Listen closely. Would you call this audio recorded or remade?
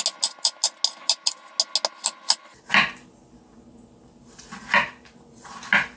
recorded